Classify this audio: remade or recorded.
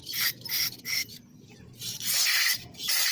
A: remade